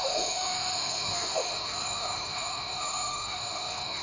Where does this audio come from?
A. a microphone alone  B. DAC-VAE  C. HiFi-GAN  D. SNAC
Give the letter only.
B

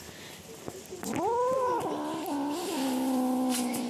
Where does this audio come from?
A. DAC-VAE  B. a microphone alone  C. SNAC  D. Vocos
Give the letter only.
B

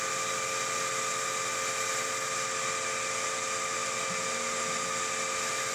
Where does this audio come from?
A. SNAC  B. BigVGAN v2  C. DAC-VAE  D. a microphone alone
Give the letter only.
D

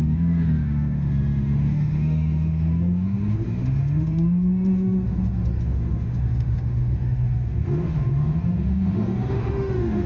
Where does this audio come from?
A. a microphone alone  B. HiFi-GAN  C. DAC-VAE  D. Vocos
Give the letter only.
C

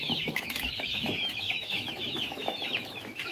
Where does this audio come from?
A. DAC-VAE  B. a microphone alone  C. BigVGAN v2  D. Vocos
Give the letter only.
A